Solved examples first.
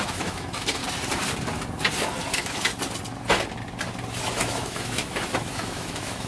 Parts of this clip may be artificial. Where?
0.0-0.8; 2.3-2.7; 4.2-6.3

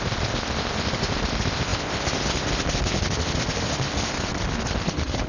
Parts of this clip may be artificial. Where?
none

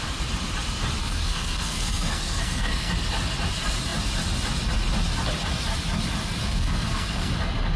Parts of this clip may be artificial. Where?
1.0-2.9; 6.4-7.3

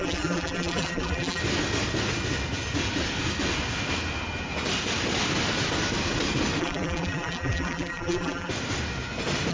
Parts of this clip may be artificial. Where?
0.0-1.4; 6.6-8.5

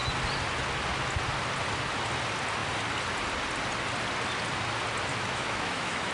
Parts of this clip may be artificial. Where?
5.1-6.1